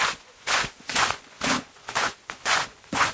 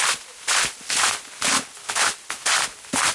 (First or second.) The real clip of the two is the second